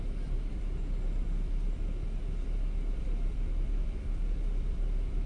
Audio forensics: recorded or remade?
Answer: remade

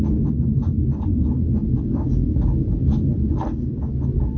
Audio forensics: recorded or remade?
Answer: recorded